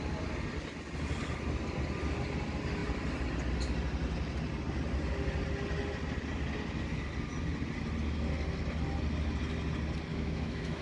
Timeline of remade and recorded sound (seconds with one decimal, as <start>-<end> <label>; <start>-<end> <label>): 0.0-10.1 recorded; 10.1-10.8 remade